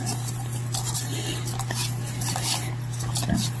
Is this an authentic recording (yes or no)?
yes